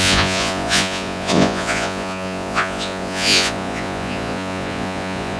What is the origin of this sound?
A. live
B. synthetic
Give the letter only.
B